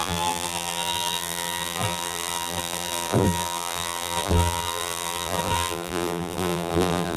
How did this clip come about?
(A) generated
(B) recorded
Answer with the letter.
A